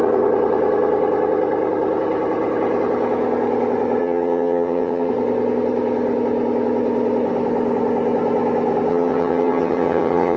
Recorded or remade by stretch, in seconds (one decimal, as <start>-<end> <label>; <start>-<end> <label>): 0.0-4.0 recorded; 4.0-5.1 remade; 5.1-8.9 recorded; 8.9-10.4 remade